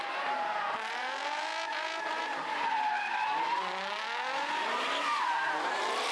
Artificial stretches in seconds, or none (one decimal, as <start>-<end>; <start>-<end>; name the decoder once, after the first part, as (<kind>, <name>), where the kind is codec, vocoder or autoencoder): 0.0-1.5 (vocoder, BigVGAN v2); 5.2-6.1